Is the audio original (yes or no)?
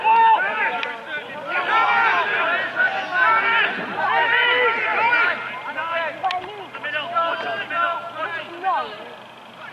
yes